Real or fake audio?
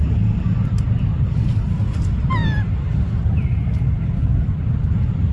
real